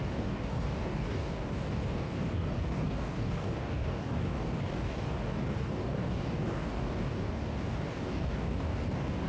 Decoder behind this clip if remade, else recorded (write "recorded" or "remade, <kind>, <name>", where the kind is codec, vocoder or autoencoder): remade, codec, DAC